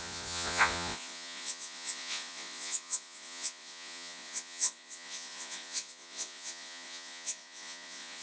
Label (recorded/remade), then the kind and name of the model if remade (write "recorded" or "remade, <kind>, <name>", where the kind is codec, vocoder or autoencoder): remade, vocoder, Vocos